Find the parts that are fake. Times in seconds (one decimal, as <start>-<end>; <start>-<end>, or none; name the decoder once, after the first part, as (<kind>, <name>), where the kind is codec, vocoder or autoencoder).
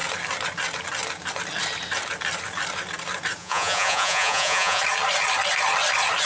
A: 3.4-4.8 (vocoder, Vocos)